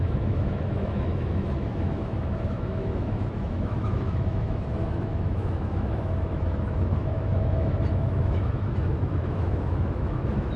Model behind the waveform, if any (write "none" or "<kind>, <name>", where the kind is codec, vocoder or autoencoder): autoencoder, DAC-VAE